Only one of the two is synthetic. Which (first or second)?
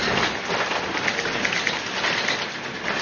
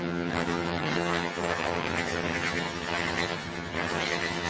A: second